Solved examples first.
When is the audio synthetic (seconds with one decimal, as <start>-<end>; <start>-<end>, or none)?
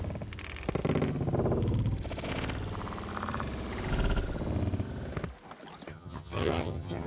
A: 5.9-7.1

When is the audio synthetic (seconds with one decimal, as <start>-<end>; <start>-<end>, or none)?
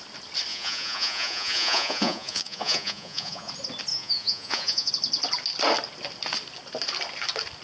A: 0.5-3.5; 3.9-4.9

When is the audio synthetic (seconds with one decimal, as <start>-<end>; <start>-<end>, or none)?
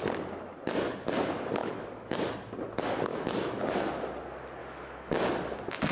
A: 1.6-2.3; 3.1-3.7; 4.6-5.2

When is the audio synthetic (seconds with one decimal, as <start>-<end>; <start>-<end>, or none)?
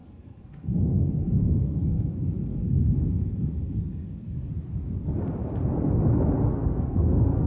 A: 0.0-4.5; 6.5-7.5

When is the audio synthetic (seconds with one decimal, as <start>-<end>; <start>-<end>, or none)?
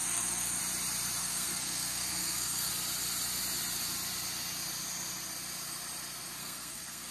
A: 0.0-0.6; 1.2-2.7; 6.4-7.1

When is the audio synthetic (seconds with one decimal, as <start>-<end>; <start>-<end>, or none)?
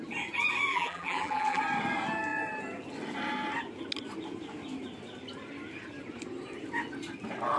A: 0.7-1.6